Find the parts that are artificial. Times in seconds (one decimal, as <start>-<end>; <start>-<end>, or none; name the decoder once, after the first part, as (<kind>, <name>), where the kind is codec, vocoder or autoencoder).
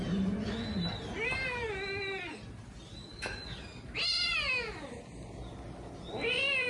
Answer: none